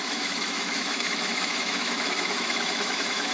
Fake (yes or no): yes